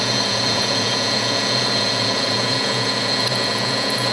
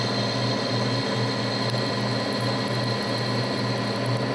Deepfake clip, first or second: first